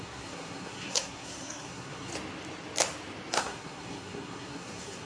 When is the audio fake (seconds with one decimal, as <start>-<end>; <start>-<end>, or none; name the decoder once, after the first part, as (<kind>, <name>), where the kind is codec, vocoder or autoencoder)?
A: 0.0-2.1 (codec, SNAC); 3.3-5.1